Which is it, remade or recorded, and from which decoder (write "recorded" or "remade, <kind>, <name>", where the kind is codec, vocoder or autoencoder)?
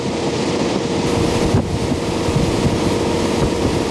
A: remade, vocoder, BigVGAN v2